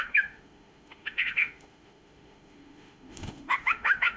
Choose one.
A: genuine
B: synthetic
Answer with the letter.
B